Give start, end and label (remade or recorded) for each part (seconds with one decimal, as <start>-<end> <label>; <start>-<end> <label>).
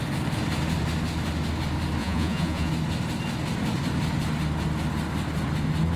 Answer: 0.0-2.0 recorded; 2.0-2.7 remade; 2.7-6.0 recorded